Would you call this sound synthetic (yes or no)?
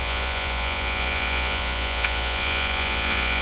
yes